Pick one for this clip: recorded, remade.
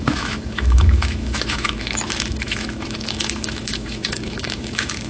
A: remade